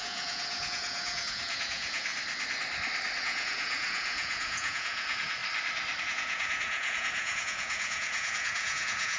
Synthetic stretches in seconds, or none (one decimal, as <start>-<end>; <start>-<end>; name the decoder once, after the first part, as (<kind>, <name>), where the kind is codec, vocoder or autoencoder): 0.0-2.1 (vocoder, Vocos); 3.2-5.4; 6.0-9.2